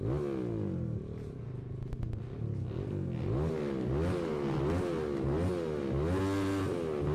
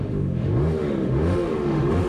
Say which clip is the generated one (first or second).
second